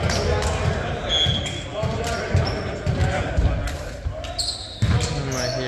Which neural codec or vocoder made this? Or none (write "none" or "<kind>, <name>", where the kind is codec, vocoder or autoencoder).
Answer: none